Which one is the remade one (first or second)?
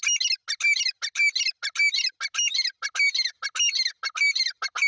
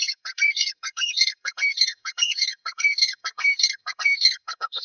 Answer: second